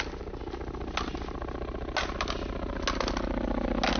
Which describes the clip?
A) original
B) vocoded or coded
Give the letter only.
A